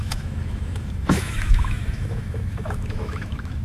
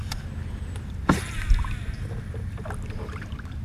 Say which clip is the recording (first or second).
second